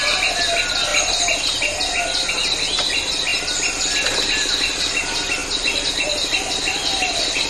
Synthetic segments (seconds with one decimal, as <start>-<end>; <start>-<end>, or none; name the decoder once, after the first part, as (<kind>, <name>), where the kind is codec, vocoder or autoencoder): 5.4-5.9 (vocoder, BigVGAN v2)